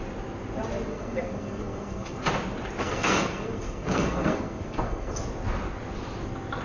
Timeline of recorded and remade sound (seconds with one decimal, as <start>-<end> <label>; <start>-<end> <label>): 0.0-0.9 recorded; 0.9-2.3 remade; 2.3-2.8 recorded; 2.8-5.2 remade; 5.2-6.6 recorded